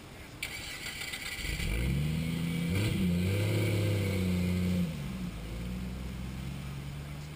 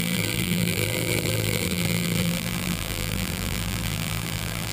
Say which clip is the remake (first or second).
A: second